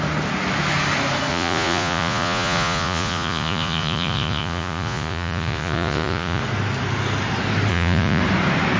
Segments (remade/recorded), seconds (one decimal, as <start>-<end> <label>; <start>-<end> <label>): 0.0-1.3 recorded; 1.3-6.4 remade; 6.4-7.7 recorded; 7.7-8.2 remade; 8.2-8.8 recorded